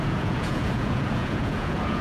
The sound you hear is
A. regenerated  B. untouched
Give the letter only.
A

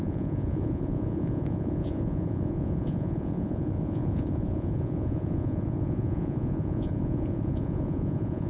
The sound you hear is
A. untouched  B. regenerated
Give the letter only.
B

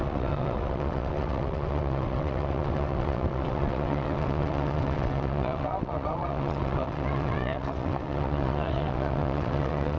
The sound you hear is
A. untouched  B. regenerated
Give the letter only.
B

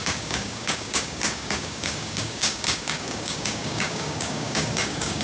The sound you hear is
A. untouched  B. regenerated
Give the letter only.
B